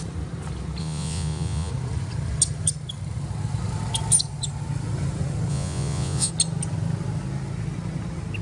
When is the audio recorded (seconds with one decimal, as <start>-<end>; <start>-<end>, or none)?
0.0-0.8; 1.7-5.5; 6.3-8.4